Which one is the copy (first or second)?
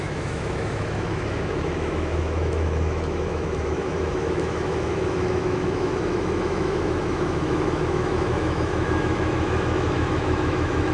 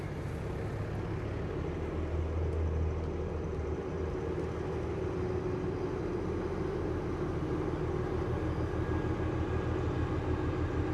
first